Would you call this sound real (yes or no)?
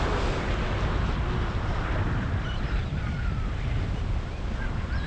yes